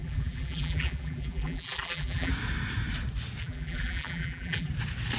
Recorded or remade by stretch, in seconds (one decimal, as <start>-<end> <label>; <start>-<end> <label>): 0.0-2.3 remade; 2.3-3.4 recorded; 3.4-4.7 remade; 4.7-5.2 recorded